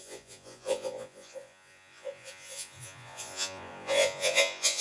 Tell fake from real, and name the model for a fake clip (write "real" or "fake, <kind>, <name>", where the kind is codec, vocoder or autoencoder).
fake, vocoder, Vocos